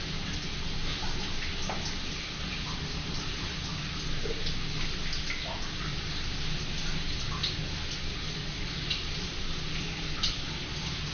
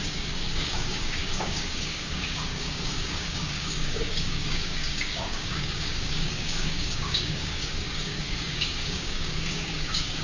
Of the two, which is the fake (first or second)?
second